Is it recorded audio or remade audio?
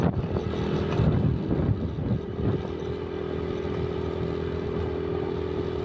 recorded